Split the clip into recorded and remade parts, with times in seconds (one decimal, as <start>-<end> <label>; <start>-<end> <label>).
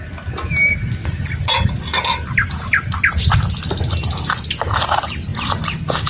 0.0-1.0 recorded; 1.0-1.7 remade; 1.7-6.1 recorded